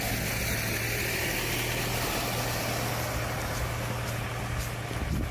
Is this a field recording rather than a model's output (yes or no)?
yes